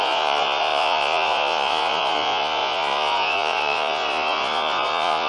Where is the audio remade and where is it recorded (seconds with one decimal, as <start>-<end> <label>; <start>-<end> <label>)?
0.0-5.3 remade